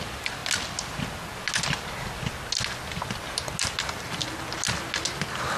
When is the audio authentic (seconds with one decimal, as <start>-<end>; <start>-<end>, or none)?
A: 0.0-5.6